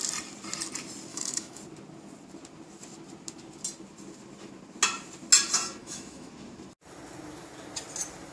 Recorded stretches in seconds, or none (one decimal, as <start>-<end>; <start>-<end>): 0.0-1.1; 1.6-5.8; 6.3-8.3